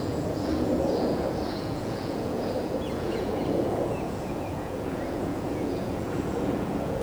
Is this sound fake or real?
fake